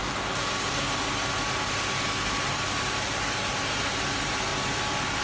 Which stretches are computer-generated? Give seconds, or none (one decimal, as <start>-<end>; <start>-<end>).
none